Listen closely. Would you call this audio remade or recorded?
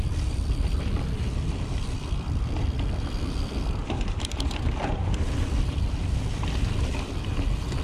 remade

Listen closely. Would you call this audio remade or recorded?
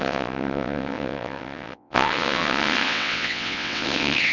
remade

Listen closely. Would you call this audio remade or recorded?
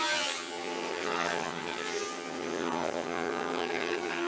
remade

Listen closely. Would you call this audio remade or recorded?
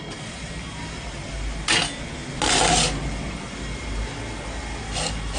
recorded